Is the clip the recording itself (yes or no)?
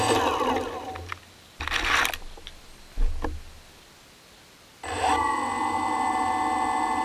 yes